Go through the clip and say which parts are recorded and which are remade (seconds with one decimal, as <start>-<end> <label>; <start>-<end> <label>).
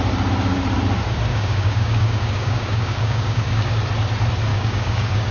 0.0-1.3 recorded; 1.3-3.8 remade; 3.8-4.5 recorded; 4.5-5.3 remade